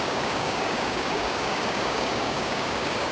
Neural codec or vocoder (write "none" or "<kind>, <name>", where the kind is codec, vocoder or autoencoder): codec, DAC